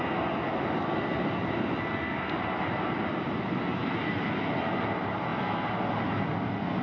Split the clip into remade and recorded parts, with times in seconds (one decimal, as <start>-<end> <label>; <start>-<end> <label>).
0.0-6.8 recorded